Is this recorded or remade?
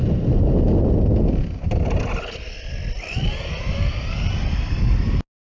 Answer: recorded